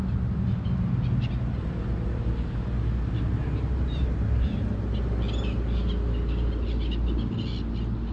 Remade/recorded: recorded